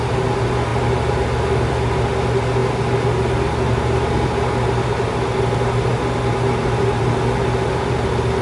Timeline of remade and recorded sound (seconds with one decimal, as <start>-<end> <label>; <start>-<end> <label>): 0.0-8.4 recorded

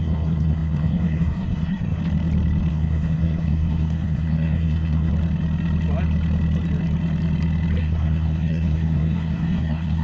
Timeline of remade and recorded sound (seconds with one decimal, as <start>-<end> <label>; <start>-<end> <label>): 0.0-2.0 remade; 2.0-2.7 recorded; 2.7-5.1 remade; 5.1-7.8 recorded; 7.8-10.0 remade

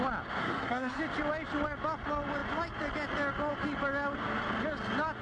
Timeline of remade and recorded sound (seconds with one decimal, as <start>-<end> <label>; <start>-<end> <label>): 0.0-0.4 recorded; 0.4-1.0 remade; 1.0-5.2 recorded

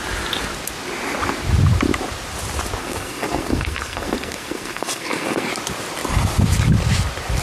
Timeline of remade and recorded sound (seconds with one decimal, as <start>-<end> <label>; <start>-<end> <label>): 0.0-2.8 recorded; 2.8-5.5 remade; 5.5-7.4 recorded